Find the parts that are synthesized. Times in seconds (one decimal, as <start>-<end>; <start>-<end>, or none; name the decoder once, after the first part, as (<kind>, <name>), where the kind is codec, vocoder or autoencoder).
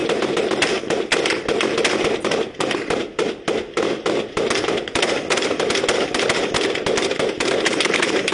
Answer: none